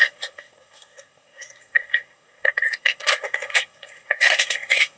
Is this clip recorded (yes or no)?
no